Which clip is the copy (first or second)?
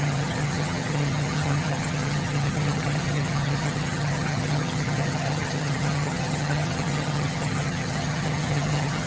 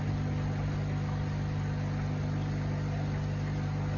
first